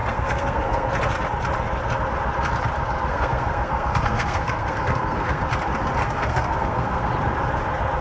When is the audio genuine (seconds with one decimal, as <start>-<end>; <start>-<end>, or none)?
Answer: 0.9-3.1; 5.4-6.0; 7.1-8.0